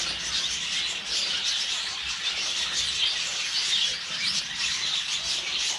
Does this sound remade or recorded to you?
recorded